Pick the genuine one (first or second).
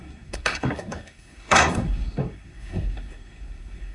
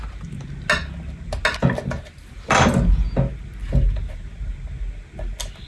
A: second